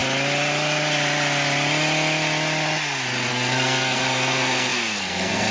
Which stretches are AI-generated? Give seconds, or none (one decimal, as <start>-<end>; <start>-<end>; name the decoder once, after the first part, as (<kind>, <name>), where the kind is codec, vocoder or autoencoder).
3.3-5.5 (codec, SNAC)